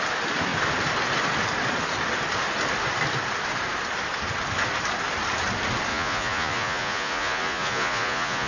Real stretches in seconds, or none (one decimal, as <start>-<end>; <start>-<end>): 0.0-5.9